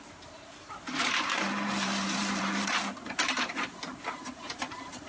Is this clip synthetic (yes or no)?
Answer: yes